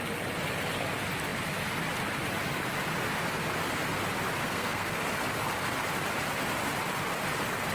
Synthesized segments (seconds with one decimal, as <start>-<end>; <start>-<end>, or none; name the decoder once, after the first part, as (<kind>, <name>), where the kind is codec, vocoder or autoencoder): 4.4-5.0 (codec, SNAC)